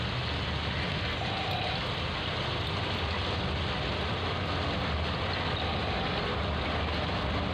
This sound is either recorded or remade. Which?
recorded